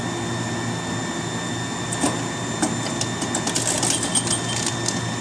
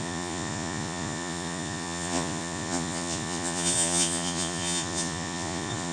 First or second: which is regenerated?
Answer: second